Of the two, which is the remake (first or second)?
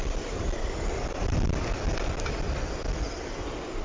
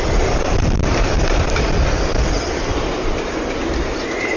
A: second